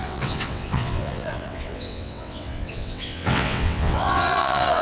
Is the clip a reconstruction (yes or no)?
yes